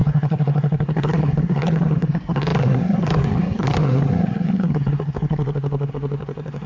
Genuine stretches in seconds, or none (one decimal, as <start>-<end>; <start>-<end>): none